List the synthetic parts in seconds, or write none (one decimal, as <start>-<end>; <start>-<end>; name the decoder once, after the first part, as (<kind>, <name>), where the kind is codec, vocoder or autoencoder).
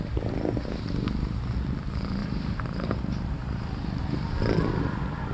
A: 2.2-4.0 (vocoder, BigVGAN v2)